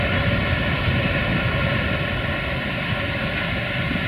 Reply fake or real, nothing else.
real